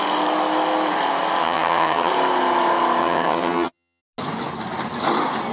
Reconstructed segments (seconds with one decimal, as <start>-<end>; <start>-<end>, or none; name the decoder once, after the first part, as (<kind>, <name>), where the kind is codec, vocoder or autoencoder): 1.4-2.1 (vocoder, HiFi-GAN); 3.0-4.0